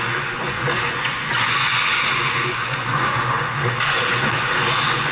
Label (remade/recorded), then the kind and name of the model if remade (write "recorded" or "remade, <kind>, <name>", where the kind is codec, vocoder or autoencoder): remade, vocoder, Vocos